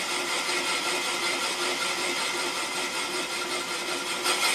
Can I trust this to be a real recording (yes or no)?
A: yes